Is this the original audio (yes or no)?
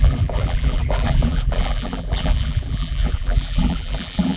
no